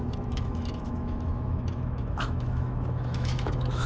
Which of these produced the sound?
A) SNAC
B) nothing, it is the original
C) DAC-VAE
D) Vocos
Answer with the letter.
C